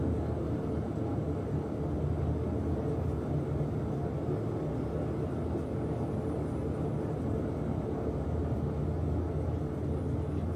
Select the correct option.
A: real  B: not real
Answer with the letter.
A